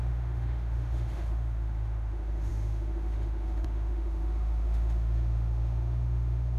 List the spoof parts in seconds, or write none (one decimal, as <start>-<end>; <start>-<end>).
0.0-6.6